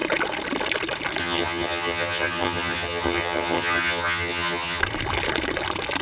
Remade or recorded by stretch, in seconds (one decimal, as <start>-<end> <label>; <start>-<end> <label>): 0.0-1.2 recorded; 1.2-4.8 remade; 4.8-6.0 recorded